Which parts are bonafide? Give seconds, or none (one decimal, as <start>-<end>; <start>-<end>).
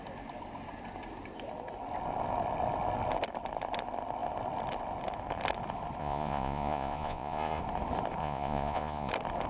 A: 0.0-6.0; 7.6-8.2; 9.1-9.5